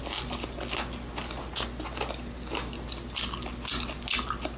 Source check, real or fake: real